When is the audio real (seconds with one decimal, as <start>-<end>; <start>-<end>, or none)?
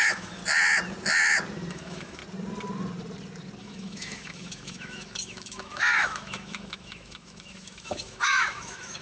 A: 0.4-1.7; 2.2-3.6